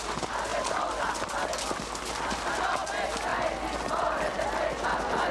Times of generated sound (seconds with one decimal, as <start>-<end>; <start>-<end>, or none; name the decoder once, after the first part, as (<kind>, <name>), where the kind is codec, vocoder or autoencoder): none